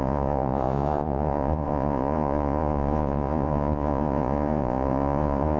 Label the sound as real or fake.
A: fake